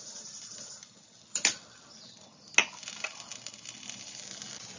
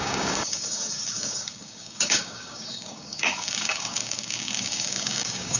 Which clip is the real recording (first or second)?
first